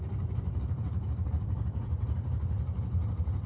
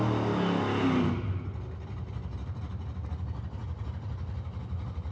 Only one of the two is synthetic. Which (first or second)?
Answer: first